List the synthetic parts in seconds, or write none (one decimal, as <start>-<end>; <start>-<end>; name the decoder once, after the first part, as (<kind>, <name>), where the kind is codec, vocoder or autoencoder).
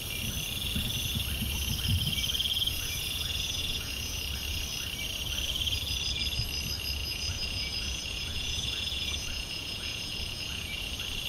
2.5-4.2 (vocoder, Vocos); 7.0-10.9